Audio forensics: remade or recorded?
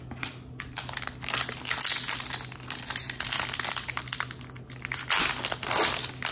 recorded